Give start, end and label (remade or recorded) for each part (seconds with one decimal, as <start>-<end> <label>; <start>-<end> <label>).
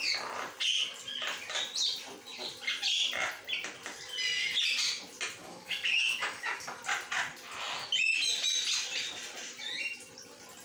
0.0-5.4 recorded; 5.4-6.8 remade; 6.8-10.6 recorded